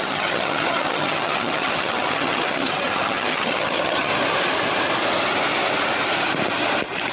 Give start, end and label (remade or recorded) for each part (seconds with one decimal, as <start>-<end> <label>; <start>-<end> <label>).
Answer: 0.0-4.1 remade; 4.1-7.1 recorded

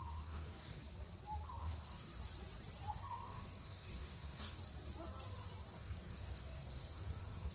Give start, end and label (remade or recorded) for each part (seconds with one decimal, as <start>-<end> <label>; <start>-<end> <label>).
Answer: 0.0-0.8 remade; 0.8-1.6 recorded; 1.6-2.2 remade; 2.2-2.9 recorded; 2.9-4.6 remade; 4.6-5.7 recorded; 5.7-7.5 remade